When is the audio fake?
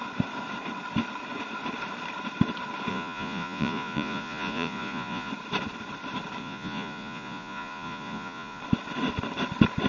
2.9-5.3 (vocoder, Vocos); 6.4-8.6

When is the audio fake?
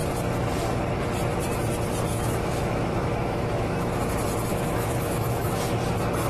2.1-4.1 (autoencoder, DAC-VAE); 4.5-5.6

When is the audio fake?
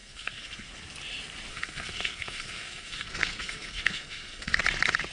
0.0-0.7 (codec, SNAC); 1.5-4.6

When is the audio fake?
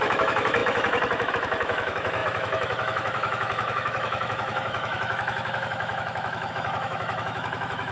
0.0-7.9 (autoencoder, DAC-VAE)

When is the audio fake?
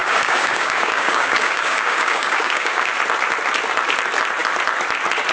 0.0-2.9 (codec, DAC)